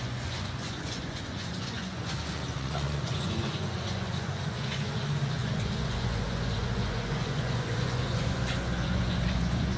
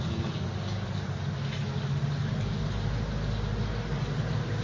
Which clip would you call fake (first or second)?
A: first